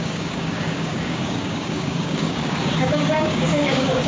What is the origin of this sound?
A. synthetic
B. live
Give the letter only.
A